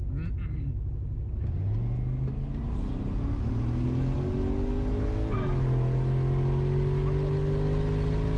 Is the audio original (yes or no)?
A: yes